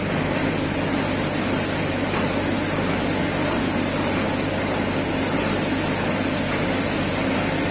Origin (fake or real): real